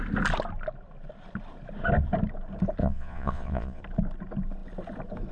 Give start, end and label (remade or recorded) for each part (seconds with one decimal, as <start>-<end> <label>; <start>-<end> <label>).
0.0-2.8 recorded; 2.8-3.8 remade; 3.8-5.3 recorded